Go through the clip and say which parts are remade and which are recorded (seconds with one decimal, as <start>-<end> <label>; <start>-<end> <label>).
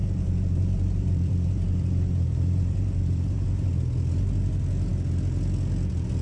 0.0-3.7 remade; 3.7-6.2 recorded